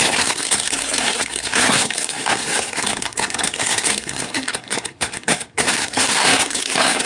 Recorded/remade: remade